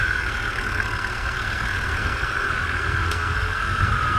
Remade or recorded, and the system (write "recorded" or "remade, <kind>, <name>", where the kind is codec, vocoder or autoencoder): remade, codec, SNAC